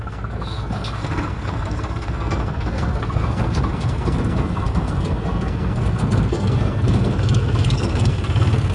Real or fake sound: fake